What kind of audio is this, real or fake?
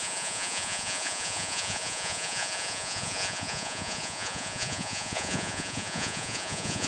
fake